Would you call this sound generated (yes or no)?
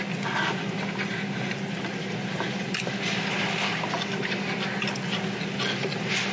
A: no